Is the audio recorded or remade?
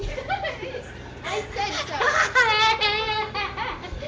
recorded